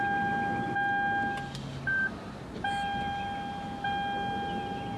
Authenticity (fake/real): real